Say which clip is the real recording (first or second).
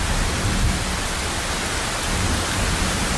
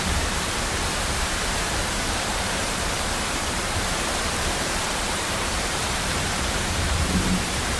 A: first